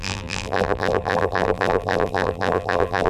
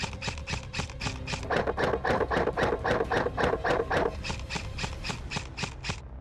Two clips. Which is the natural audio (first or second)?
second